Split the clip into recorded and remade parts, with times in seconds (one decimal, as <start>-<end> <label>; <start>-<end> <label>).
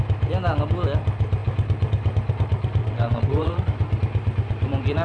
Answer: 0.0-2.8 recorded; 2.8-3.6 remade; 3.6-5.0 recorded